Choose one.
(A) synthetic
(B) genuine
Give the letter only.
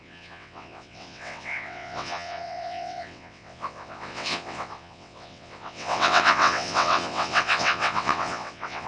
A